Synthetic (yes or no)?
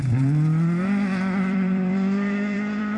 yes